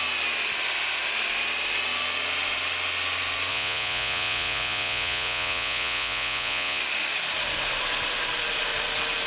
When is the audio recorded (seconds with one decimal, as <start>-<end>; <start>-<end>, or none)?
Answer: 0.0-3.5; 6.8-9.3